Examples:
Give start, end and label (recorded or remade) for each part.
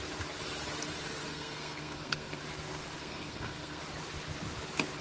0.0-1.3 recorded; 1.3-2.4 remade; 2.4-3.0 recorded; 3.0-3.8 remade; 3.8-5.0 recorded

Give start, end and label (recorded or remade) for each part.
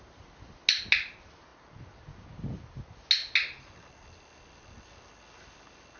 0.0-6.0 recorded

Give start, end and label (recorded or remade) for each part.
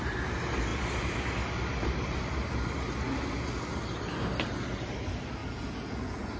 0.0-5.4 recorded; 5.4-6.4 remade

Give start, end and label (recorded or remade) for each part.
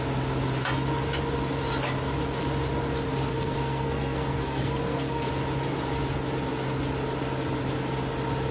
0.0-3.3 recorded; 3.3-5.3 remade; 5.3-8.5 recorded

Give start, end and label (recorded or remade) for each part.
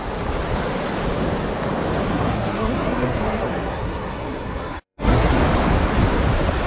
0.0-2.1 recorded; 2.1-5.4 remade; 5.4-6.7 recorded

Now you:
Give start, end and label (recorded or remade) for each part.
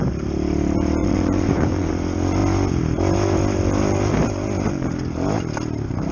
0.0-1.0 recorded; 1.0-1.9 remade; 1.9-6.1 recorded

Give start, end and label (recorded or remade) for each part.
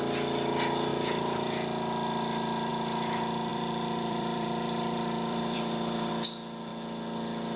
0.0-3.5 recorded; 3.5-6.1 remade; 6.1-7.6 recorded